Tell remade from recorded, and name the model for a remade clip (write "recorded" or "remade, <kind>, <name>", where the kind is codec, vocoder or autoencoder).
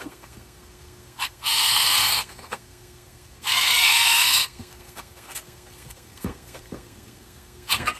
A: remade, codec, SNAC